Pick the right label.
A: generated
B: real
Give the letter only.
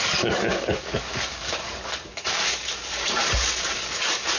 A